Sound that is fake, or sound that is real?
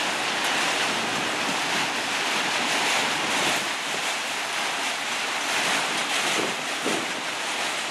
real